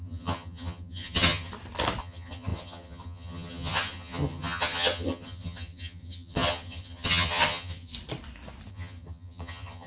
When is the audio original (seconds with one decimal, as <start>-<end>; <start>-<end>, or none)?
1.5-2.0; 7.9-8.7